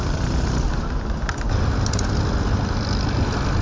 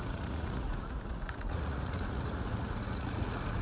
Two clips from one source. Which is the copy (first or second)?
second